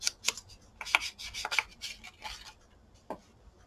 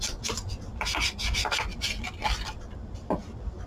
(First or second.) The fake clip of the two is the second